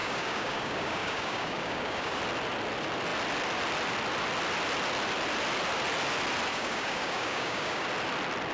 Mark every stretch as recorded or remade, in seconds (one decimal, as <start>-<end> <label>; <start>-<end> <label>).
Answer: 0.0-2.2 remade; 2.2-6.5 recorded; 6.5-7.9 remade; 7.9-8.5 recorded